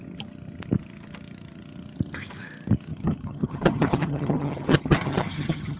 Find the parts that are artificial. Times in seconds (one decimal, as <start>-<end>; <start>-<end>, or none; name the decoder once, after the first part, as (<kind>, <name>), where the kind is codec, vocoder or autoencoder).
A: 2.9-5.8 (vocoder, HiFi-GAN)